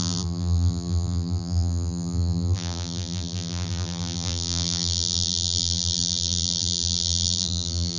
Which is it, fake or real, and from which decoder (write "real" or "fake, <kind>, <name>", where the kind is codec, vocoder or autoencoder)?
fake, vocoder, BigVGAN v2